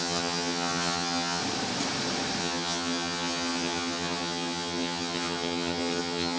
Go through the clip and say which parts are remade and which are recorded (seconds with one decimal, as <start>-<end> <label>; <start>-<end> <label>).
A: 0.0-1.4 remade; 1.4-2.4 recorded; 2.4-6.4 remade